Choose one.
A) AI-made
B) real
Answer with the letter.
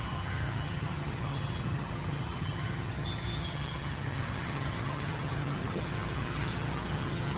A